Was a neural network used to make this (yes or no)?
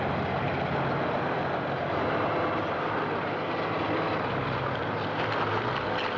no